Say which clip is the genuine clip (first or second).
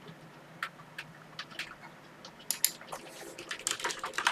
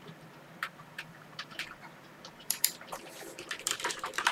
first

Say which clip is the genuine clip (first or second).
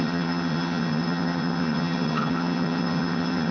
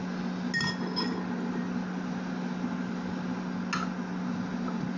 second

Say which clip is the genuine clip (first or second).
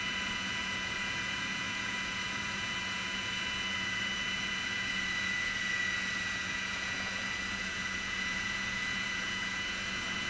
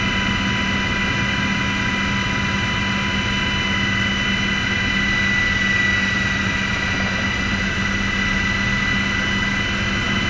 second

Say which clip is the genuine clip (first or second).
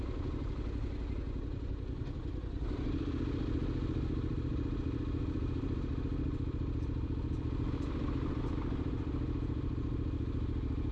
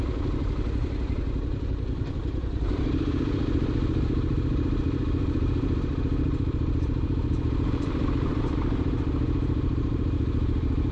first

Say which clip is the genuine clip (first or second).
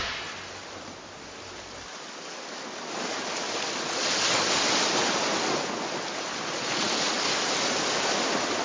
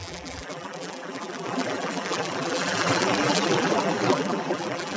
first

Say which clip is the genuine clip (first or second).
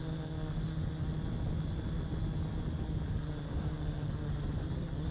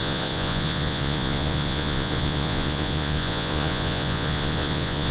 first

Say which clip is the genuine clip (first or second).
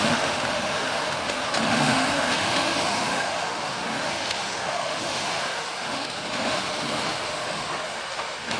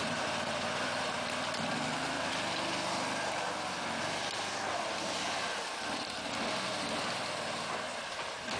second